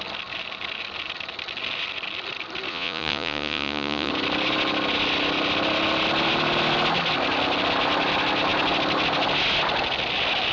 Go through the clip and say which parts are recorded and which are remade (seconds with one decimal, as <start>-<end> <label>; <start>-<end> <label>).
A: 0.0-2.7 recorded; 2.7-4.1 remade; 4.1-10.5 recorded